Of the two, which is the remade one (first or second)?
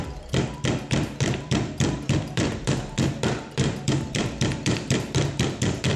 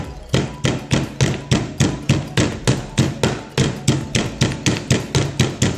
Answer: first